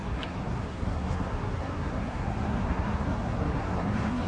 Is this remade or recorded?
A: remade